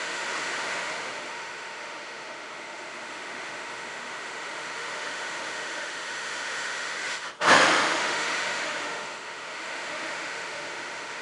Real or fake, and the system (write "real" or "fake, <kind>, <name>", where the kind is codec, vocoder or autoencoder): fake, autoencoder, DAC-VAE